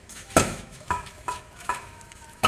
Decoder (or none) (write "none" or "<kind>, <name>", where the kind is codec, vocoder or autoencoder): autoencoder, DAC-VAE